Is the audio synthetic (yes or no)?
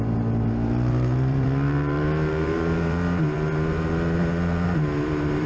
yes